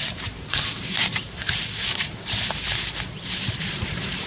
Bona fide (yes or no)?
no